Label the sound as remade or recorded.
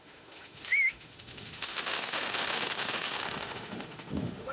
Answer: remade